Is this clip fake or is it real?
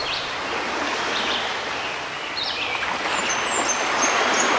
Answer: real